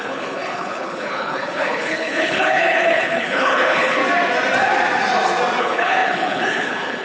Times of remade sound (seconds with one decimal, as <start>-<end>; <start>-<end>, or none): 0.0-4.0; 5.6-7.0